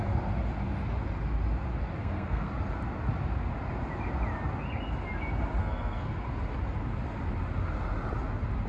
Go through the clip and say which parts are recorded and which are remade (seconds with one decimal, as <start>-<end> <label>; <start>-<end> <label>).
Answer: 0.0-2.0 recorded; 2.0-2.5 remade; 2.5-5.6 recorded; 5.6-6.1 remade; 6.1-8.7 recorded